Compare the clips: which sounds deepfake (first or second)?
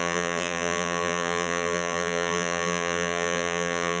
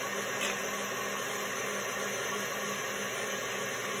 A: first